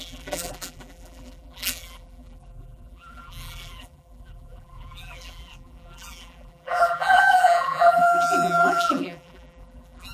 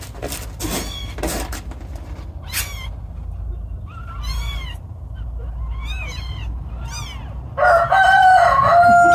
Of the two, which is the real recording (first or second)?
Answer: second